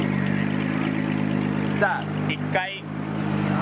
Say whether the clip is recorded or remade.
recorded